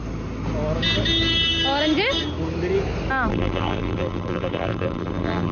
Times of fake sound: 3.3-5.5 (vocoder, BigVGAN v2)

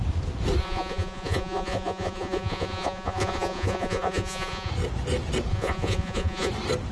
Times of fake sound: 0.6-4.7 (vocoder, Vocos); 5.5-6.5

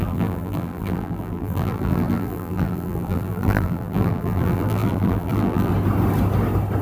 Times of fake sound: 0.0-5.7 (vocoder, BigVGAN v2)

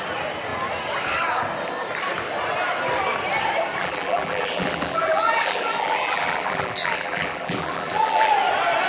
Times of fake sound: 3.8-8.3 (vocoder, BigVGAN v2)

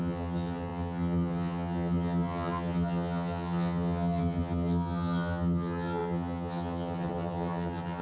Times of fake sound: 0.0-8.0 (vocoder, HiFi-GAN)

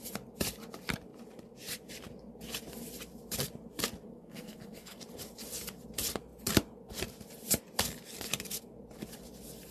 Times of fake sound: 4.1-5.0 (codec, SNAC)

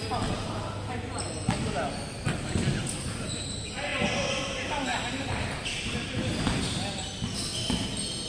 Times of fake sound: none

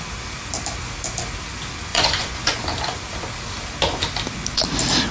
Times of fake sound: 1.9-2.6 (vocoder, Vocos)